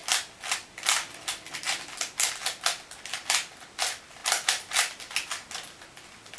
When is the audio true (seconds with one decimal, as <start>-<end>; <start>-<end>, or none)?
0.0-6.4